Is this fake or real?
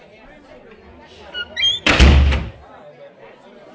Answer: real